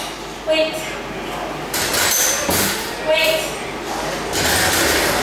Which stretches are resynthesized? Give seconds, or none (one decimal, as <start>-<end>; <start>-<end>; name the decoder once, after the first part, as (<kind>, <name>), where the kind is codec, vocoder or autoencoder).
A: none